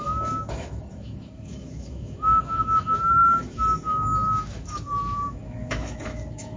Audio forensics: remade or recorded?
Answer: remade